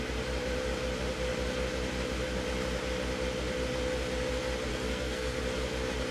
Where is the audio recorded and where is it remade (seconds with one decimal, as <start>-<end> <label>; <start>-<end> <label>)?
0.0-4.7 recorded; 4.7-5.4 remade; 5.4-6.1 recorded